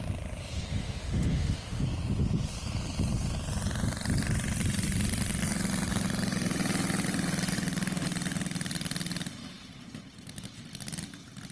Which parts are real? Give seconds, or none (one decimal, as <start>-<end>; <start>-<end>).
0.0-0.7; 1.8-11.5